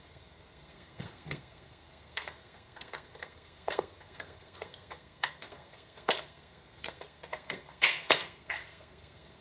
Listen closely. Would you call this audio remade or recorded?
remade